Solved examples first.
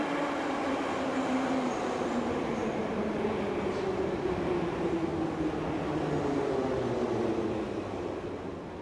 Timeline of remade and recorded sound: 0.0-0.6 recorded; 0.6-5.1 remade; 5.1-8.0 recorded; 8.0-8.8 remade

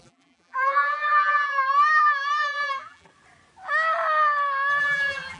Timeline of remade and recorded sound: 0.0-3.1 remade; 3.1-4.8 recorded; 4.8-5.4 remade